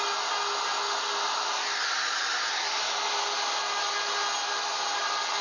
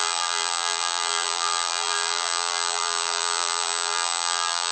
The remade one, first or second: second